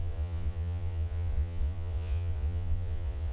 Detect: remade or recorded remade